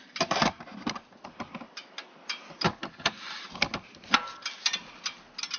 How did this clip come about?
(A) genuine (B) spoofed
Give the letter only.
A